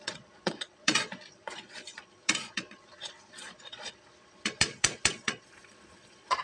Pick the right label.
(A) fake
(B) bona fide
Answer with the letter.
A